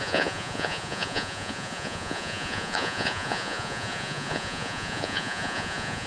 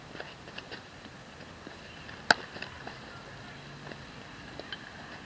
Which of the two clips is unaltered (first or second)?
second